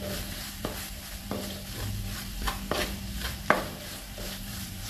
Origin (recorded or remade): remade